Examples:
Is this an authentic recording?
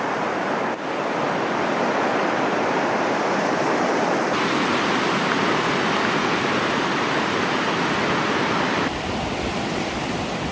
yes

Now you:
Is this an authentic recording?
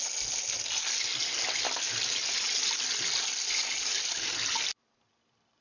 yes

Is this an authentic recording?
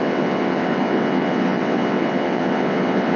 no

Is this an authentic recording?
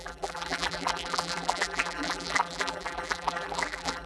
no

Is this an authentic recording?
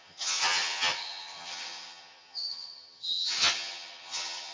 no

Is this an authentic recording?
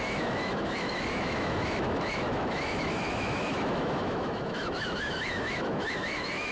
no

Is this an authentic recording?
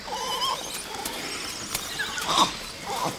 yes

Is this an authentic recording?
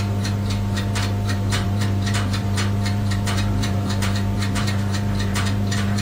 no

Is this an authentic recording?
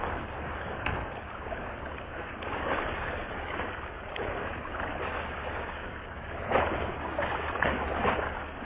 no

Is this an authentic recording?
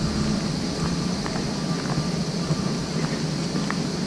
yes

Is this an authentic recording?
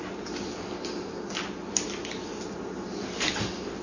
yes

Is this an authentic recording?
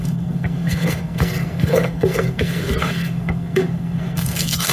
no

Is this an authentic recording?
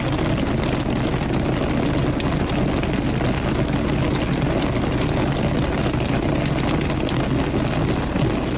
yes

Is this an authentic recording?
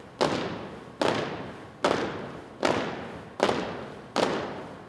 yes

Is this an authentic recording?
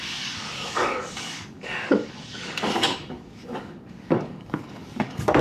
no